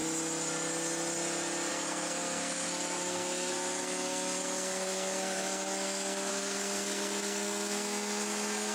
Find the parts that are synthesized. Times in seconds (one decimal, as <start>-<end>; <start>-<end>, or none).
1.7-8.7